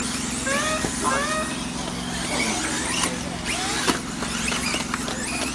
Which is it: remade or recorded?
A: recorded